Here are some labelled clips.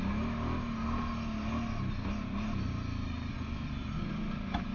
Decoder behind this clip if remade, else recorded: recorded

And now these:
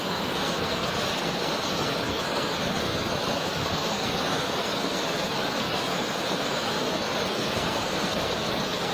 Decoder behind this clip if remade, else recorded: remade, codec, SNAC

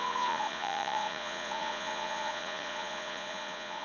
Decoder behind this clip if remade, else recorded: remade, vocoder, Vocos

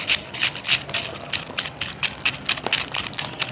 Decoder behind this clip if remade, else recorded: recorded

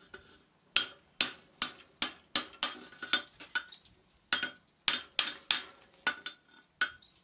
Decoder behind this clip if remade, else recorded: recorded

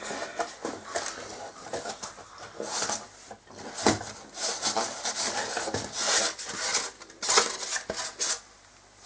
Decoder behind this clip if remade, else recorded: recorded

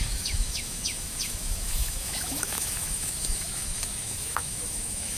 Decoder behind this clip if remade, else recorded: remade, autoencoder, DAC-VAE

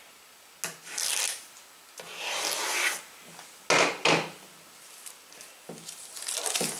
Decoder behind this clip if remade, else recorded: recorded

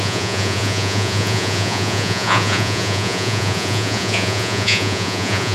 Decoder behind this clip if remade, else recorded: remade, vocoder, Vocos